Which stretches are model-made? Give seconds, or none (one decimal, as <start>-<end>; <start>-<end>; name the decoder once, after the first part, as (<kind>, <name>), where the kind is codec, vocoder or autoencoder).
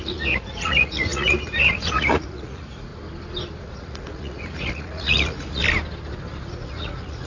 0.0-2.9 (vocoder, Vocos); 3.6-5.6; 6.5-7.3